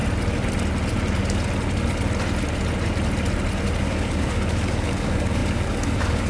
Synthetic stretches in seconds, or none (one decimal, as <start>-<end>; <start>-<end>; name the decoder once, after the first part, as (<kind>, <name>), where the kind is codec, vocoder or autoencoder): 3.8-6.3 (codec, DAC)